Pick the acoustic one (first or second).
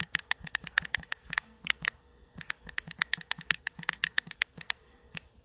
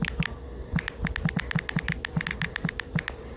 second